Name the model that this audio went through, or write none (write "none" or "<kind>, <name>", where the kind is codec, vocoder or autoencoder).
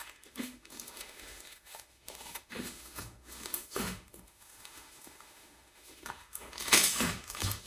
autoencoder, DAC-VAE